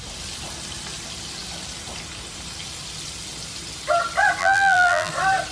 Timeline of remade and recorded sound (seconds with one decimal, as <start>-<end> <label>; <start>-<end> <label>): 0.0-4.4 recorded; 4.4-5.1 remade; 5.1-5.5 recorded